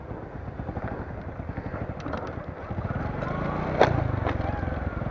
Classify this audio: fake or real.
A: real